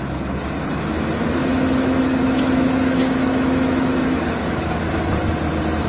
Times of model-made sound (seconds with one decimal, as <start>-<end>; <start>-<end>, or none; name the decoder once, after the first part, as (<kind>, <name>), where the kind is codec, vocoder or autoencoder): 1.4-4.9 (autoencoder, DAC-VAE)

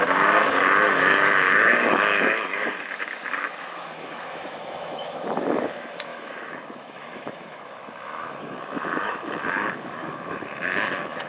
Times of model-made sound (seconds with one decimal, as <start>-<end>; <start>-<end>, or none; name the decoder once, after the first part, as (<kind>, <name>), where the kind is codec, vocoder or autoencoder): 0.0-11.3 (autoencoder, DAC-VAE)

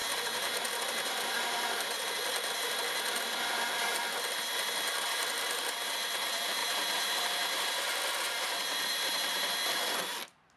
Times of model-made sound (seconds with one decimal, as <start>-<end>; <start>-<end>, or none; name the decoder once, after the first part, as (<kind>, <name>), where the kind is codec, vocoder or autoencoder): none

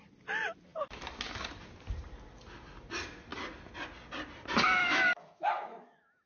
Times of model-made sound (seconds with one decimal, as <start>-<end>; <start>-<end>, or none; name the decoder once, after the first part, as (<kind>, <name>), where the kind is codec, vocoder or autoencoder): 4.8-6.3 (autoencoder, DAC-VAE)

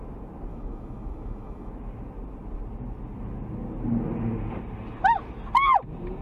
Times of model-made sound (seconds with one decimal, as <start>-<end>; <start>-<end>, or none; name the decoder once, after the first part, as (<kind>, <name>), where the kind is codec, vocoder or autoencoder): 0.5-1.7 (autoencoder, DAC-VAE)

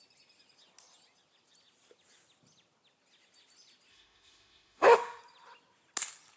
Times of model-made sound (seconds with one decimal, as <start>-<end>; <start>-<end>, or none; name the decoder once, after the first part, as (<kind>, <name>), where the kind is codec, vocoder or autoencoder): 3.9-5.2 (autoencoder, DAC-VAE)

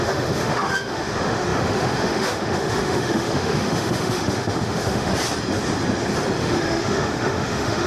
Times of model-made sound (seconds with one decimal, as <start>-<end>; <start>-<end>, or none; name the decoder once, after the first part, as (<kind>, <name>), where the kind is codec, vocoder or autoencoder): 0.0-5.1 (autoencoder, DAC-VAE); 6.4-7.9